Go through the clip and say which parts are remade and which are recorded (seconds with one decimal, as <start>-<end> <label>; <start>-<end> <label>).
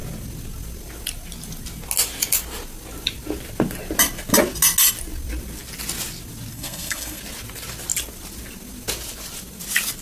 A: 0.0-6.5 recorded; 6.5-7.2 remade; 7.2-10.0 recorded